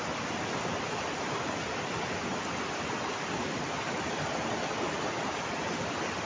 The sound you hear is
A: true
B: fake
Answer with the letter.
A